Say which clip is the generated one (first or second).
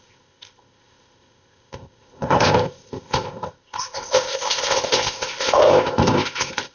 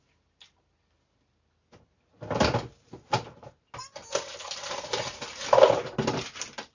first